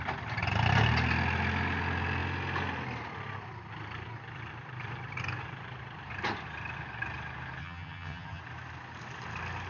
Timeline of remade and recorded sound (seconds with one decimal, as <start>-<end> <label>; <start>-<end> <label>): 0.0-7.6 recorded; 7.6-8.4 remade; 8.4-9.7 recorded